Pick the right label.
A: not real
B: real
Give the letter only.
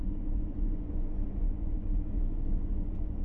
A